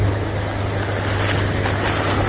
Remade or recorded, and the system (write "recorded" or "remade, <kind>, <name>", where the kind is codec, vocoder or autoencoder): recorded